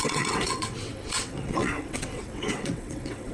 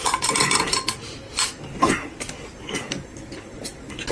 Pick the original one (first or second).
second